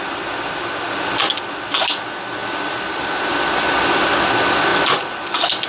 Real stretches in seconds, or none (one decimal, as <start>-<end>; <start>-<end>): 0.0-2.4; 4.2-5.7